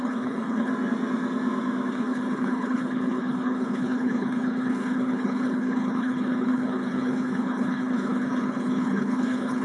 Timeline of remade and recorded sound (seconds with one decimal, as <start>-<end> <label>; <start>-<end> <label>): 0.0-0.7 remade; 0.7-1.9 recorded; 1.9-9.6 remade